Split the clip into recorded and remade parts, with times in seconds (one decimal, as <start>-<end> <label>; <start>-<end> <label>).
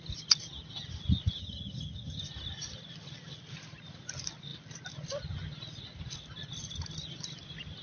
0.0-1.4 recorded; 1.4-2.2 remade; 2.2-7.8 recorded